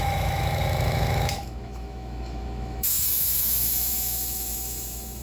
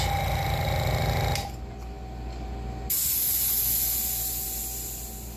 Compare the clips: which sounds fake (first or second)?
first